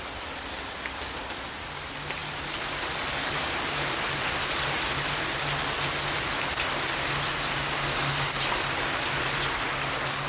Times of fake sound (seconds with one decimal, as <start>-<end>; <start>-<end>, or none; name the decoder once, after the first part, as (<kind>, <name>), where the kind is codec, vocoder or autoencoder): none